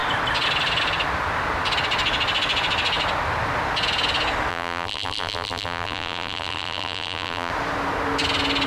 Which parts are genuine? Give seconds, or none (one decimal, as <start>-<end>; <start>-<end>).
0.0-4.5; 7.5-8.7